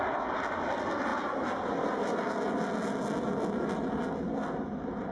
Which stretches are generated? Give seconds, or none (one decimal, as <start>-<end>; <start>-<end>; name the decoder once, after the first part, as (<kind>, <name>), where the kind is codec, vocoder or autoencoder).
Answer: none